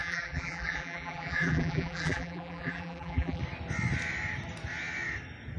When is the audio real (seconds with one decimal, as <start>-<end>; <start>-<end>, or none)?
3.4-5.6